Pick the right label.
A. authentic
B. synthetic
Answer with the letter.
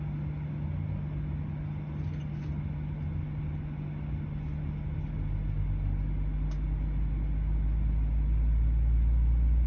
A